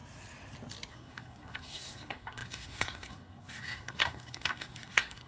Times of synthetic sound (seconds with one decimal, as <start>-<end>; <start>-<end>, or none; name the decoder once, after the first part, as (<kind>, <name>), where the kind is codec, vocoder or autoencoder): 0.9-5.3 (codec, SNAC)